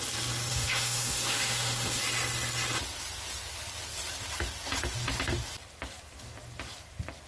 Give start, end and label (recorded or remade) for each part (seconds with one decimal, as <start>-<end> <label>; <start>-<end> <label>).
0.0-0.5 recorded; 0.5-2.0 remade; 2.0-7.3 recorded